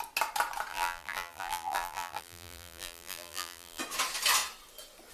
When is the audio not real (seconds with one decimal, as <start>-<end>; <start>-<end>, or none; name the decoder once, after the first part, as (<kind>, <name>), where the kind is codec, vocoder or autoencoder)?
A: 0.7-3.8 (vocoder, BigVGAN v2)